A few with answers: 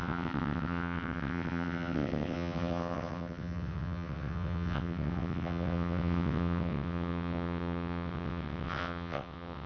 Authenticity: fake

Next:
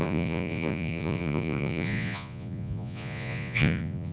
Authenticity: fake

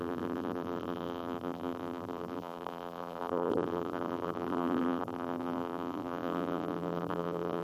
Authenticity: fake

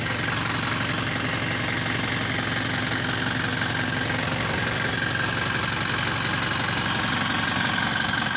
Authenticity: real